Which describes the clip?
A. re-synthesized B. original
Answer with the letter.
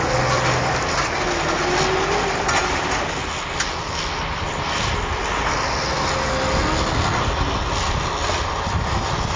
B